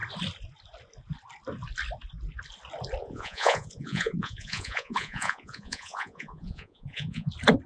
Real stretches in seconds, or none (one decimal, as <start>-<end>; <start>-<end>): 0.0-3.0; 7.3-7.7